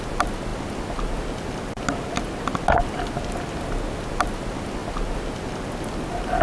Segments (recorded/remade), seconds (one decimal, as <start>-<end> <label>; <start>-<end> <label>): 0.0-6.4 recorded